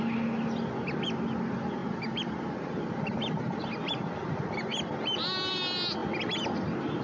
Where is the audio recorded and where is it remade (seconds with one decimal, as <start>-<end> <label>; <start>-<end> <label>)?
0.0-1.8 recorded; 1.8-3.0 remade; 3.0-7.0 recorded